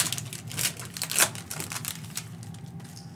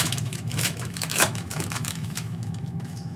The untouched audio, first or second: first